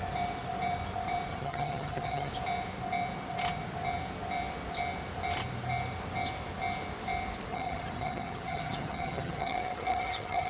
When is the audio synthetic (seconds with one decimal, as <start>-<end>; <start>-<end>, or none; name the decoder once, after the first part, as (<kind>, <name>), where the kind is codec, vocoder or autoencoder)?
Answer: 1.3-2.3 (vocoder, HiFi-GAN); 7.5-10.5